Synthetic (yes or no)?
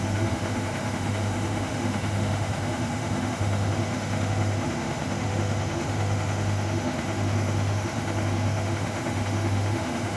yes